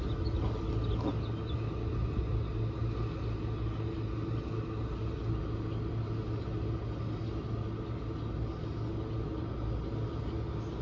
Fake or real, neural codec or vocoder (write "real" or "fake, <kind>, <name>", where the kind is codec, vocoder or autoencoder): real